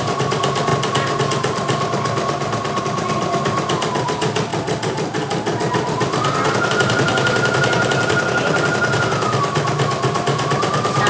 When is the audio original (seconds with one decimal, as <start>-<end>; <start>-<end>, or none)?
0.7-2.8; 4.5-6.7